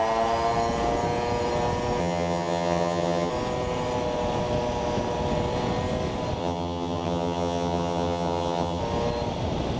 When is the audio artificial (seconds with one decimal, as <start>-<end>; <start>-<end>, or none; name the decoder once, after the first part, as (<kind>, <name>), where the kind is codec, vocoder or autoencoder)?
2.0-3.3 (vocoder, HiFi-GAN); 6.4-8.8